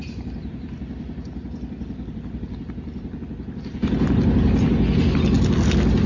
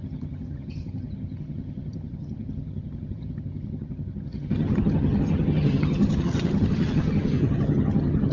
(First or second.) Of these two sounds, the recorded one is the first